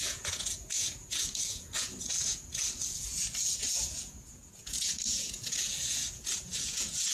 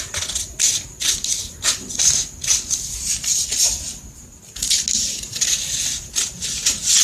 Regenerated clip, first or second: first